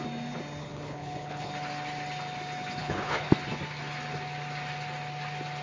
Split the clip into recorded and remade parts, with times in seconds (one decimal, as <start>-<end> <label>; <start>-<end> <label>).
0.0-0.6 recorded; 0.6-1.5 remade; 1.5-2.8 recorded; 2.8-3.3 remade; 3.3-5.6 recorded